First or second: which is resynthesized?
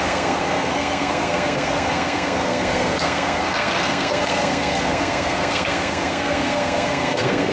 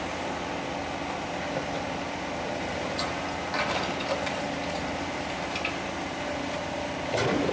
first